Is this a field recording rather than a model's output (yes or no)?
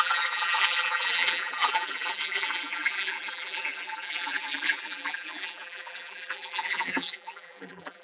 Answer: no